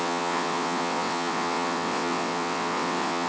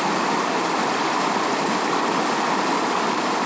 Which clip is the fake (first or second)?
first